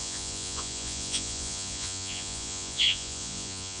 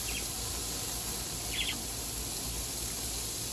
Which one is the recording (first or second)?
second